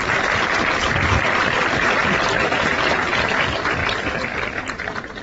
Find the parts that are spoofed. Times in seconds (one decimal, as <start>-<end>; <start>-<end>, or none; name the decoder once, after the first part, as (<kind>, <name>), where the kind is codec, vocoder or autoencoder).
none